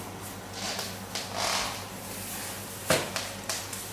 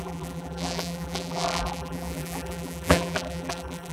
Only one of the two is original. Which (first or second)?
first